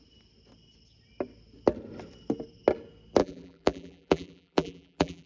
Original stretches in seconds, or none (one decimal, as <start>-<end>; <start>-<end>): 0.0-3.2